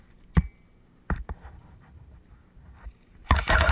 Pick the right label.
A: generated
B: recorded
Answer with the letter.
B